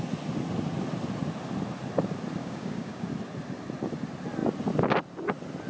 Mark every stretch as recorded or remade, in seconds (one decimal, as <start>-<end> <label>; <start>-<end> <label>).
0.0-2.4 recorded; 2.4-3.1 remade; 3.1-5.7 recorded